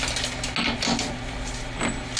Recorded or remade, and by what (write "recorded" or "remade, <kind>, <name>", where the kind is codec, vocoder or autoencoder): recorded